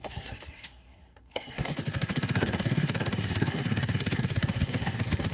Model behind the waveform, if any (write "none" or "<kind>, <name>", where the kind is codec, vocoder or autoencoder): codec, SNAC